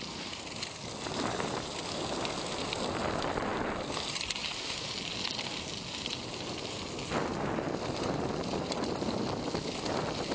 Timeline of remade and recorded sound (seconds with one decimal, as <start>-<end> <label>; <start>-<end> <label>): 0.0-10.3 recorded